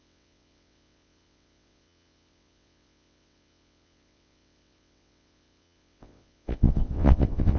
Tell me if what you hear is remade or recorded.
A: remade